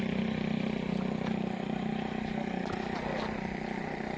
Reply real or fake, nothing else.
real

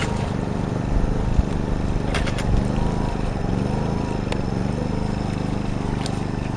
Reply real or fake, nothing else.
real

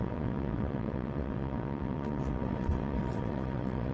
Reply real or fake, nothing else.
fake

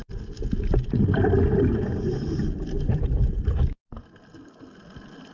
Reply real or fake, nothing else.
real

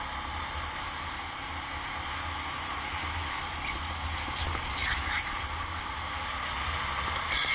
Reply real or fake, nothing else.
real